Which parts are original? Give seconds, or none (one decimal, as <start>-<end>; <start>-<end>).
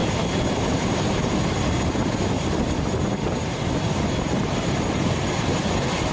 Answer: 0.0-4.4; 5.0-6.1